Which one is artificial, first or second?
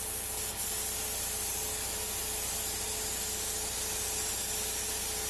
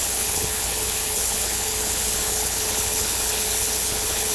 second